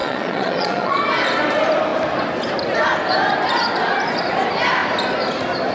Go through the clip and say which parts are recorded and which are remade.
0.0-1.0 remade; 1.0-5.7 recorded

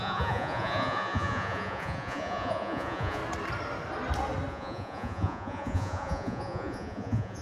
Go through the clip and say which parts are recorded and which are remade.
0.0-3.2 remade; 3.2-4.5 recorded; 4.5-7.4 remade

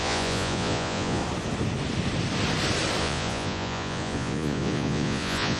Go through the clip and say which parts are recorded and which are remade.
0.0-1.2 remade; 1.2-3.0 recorded; 3.0-5.6 remade

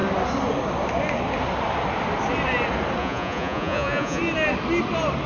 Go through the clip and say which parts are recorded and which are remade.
0.0-3.0 recorded; 3.0-4.2 remade; 4.2-5.3 recorded

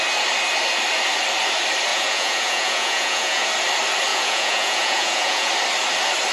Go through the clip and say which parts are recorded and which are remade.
0.0-1.9 recorded; 1.9-3.5 remade; 3.5-4.1 recorded; 4.1-5.5 remade; 5.5-6.3 recorded